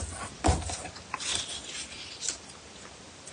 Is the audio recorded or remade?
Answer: recorded